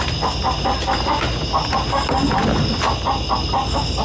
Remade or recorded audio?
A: recorded